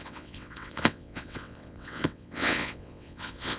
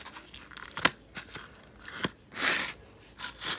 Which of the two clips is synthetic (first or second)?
first